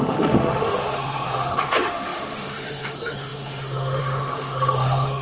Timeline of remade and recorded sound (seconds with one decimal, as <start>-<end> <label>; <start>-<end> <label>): 0.0-5.2 remade